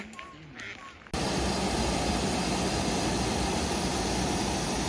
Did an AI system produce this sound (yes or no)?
no